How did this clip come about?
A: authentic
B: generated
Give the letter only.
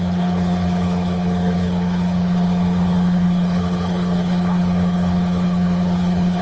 B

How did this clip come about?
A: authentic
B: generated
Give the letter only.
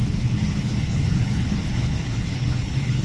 B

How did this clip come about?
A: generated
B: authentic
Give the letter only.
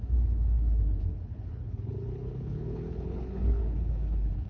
A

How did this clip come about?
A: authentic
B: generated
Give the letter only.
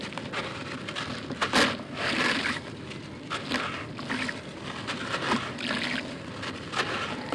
A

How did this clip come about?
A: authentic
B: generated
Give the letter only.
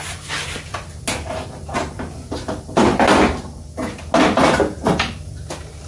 A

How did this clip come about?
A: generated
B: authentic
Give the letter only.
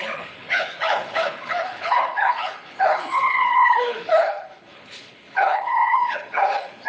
A